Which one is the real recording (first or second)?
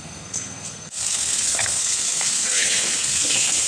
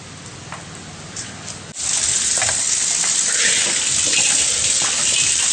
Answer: second